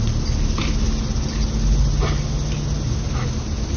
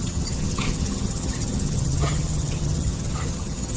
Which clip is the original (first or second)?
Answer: first